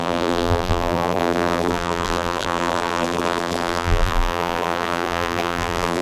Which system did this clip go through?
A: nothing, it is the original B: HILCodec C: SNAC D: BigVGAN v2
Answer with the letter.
D